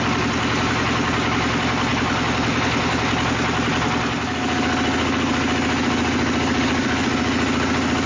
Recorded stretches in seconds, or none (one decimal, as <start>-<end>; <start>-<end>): 0.0-8.1